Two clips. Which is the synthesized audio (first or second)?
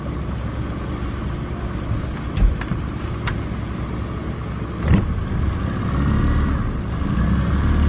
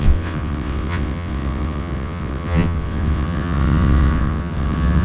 second